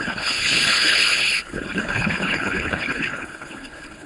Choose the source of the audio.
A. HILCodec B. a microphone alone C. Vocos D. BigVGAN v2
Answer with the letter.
A